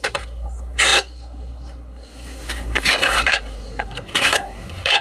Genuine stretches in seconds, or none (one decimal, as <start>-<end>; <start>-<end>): none